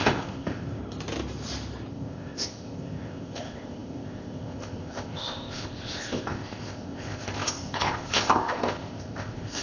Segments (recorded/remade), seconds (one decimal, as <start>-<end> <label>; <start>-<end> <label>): 0.0-0.8 remade; 0.8-1.9 recorded; 1.9-9.6 remade

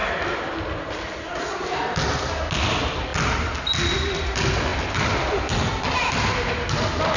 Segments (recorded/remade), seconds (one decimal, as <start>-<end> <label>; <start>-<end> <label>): 0.0-7.2 recorded

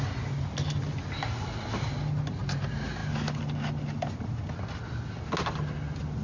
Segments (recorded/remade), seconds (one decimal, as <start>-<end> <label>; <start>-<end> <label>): 0.0-6.2 recorded

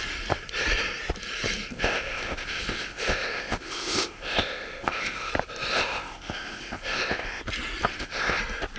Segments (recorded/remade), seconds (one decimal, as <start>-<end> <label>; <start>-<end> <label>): 0.0-1.7 recorded; 1.7-5.3 remade; 5.3-5.7 recorded; 5.7-7.4 remade; 7.4-7.9 recorded; 7.9-8.4 remade; 8.4-8.8 recorded

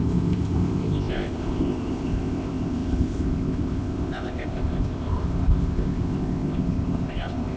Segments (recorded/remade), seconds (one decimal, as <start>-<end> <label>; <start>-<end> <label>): 0.0-7.6 remade